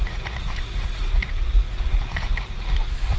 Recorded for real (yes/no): no